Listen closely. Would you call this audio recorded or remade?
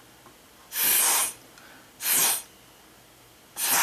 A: recorded